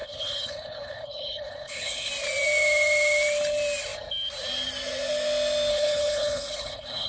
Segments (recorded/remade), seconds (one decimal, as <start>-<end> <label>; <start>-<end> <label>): 0.0-2.1 remade; 2.1-5.7 recorded; 5.7-7.1 remade